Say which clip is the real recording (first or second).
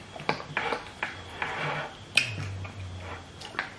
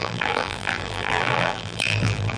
first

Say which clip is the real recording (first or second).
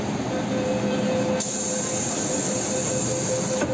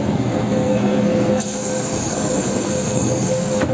first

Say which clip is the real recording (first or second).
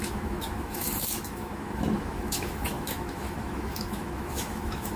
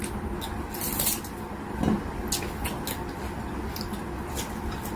second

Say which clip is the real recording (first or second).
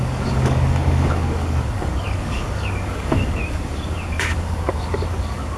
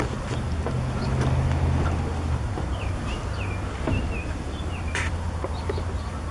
second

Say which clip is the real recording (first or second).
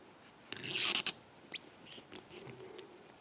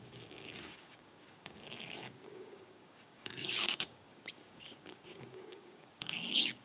first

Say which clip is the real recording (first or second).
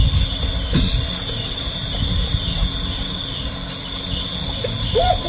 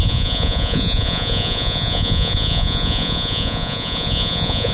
first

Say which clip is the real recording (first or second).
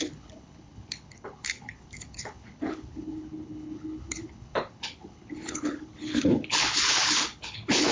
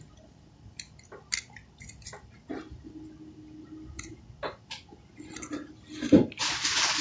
second